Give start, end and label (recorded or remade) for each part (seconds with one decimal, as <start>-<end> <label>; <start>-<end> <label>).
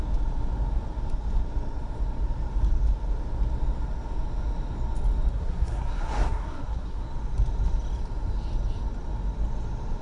0.0-5.3 recorded; 5.3-7.0 remade; 7.0-10.0 recorded